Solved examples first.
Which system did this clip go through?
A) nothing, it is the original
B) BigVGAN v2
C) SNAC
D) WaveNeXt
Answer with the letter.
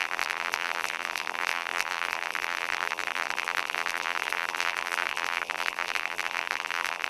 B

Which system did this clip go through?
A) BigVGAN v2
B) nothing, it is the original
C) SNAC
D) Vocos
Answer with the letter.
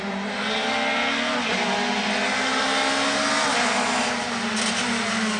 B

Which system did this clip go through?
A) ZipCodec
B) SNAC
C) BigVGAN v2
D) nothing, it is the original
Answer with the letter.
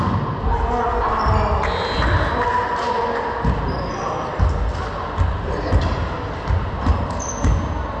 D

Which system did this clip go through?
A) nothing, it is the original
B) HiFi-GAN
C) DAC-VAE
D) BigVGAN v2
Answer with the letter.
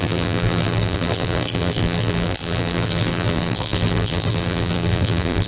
D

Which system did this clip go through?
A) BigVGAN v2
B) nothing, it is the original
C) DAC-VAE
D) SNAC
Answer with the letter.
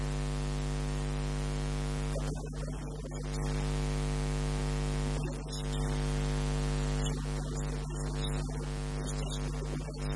B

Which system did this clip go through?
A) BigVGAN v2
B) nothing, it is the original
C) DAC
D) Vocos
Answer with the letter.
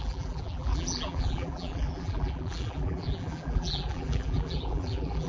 A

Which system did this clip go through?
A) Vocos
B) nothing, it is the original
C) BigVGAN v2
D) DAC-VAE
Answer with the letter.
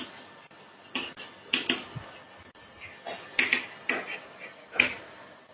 B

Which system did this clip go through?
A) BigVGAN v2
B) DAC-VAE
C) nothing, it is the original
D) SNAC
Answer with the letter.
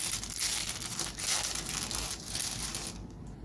C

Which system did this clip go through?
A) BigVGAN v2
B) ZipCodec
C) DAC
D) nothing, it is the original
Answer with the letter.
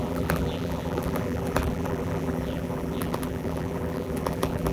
A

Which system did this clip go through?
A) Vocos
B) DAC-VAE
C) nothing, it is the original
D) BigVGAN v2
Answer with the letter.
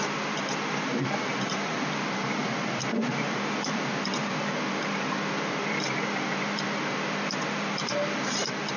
D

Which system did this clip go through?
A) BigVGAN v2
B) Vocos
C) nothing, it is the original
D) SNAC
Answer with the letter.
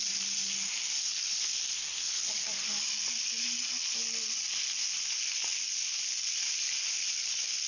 C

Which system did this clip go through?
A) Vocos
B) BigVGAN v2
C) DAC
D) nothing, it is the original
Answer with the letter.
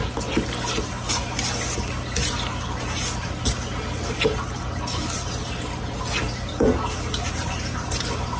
D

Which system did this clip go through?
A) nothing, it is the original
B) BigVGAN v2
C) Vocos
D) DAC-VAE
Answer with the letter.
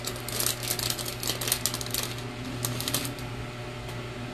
A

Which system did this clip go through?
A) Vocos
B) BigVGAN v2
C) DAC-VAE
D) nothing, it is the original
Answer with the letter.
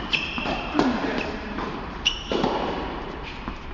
B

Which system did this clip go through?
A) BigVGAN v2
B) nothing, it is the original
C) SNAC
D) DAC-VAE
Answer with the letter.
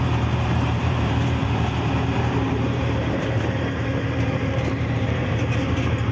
A